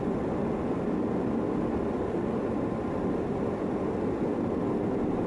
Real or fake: real